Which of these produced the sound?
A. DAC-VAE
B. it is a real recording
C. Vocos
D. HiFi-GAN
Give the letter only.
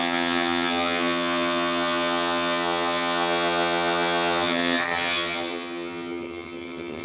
D